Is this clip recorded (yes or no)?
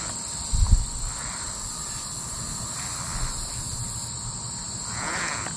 yes